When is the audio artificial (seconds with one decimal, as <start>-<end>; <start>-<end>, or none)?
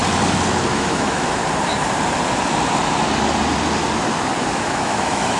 0.7-1.4; 4.5-5.4